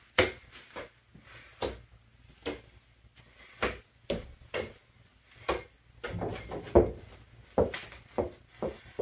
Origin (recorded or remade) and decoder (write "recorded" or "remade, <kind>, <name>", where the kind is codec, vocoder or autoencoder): recorded